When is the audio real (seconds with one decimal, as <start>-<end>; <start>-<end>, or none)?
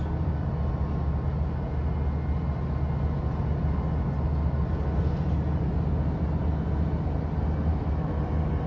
0.0-7.7; 8.2-8.7